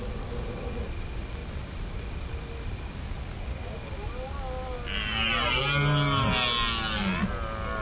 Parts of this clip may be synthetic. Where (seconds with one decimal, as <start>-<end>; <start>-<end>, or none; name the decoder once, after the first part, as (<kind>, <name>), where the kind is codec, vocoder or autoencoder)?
none